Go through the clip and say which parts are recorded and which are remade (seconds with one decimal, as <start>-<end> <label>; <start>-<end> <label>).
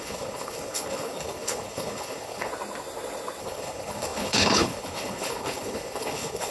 0.0-2.5 remade; 2.5-3.4 recorded; 3.4-6.5 remade